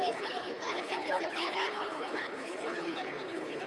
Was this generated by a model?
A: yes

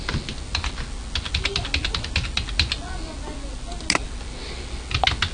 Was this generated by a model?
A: no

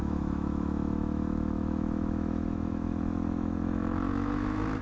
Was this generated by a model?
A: yes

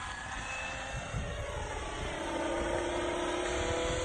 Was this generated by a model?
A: no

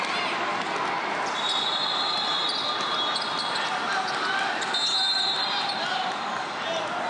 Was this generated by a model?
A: no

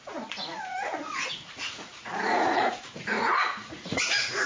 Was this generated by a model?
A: yes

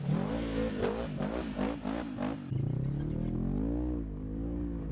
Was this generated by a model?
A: no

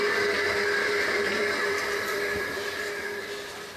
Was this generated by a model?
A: yes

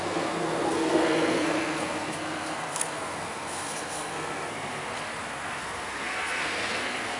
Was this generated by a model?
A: yes